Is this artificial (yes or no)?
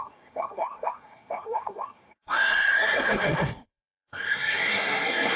yes